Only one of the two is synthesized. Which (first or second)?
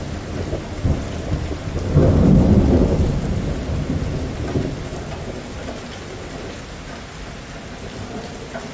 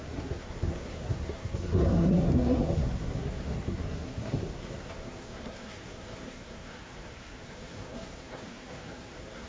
second